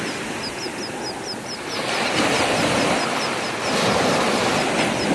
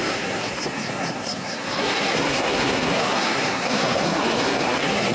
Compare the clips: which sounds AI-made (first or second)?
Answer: second